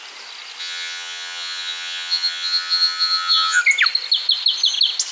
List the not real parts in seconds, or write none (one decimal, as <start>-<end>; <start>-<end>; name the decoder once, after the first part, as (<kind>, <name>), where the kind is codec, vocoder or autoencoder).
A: 0.6-3.6 (vocoder, HiFi-GAN)